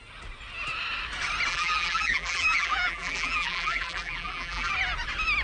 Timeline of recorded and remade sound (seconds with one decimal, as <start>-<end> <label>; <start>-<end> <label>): 0.0-1.5 recorded; 1.5-4.7 remade; 4.7-5.4 recorded